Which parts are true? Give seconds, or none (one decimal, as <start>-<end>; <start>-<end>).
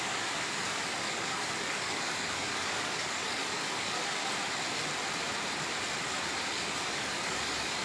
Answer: 4.2-6.5